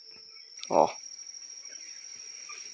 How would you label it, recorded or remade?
recorded